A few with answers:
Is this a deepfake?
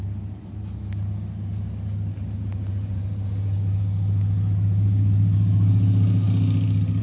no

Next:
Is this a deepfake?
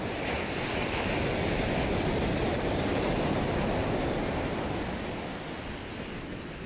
no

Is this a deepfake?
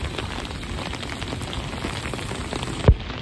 no